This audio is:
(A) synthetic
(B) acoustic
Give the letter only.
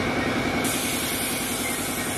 B